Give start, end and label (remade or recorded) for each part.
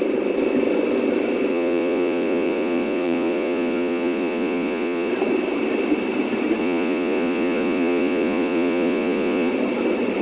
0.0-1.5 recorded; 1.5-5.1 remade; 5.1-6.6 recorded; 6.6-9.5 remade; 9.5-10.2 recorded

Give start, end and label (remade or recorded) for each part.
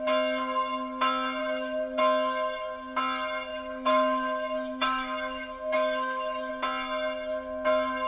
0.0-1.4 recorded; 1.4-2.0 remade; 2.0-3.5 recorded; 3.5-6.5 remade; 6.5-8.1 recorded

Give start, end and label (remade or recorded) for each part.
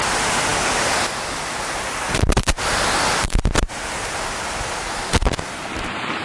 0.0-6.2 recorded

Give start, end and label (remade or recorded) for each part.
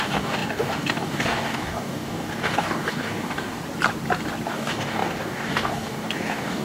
0.0-3.6 remade; 3.6-4.5 recorded; 4.5-6.6 remade